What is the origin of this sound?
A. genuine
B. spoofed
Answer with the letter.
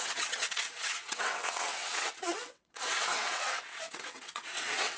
B